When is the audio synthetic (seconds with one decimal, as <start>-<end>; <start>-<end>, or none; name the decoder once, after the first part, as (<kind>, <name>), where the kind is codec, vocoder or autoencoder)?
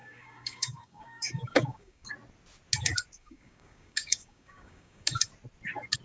0.0-2.1 (codec, DAC); 3.2-5.2